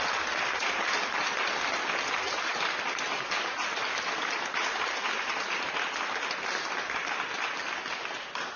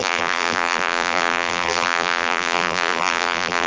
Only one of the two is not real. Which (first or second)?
second